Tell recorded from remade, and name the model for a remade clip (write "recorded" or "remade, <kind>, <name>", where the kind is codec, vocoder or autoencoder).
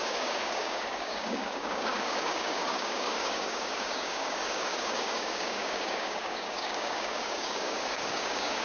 remade, codec, DAC